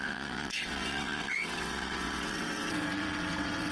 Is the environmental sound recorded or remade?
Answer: remade